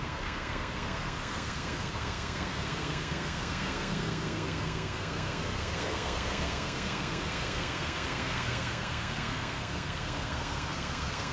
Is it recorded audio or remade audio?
remade